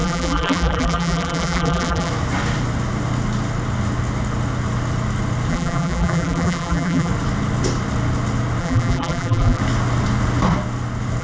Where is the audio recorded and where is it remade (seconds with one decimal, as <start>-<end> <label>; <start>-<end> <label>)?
0.0-2.1 remade; 2.1-5.5 recorded; 5.5-7.1 remade; 7.1-8.6 recorded; 8.6-9.6 remade; 9.6-11.2 recorded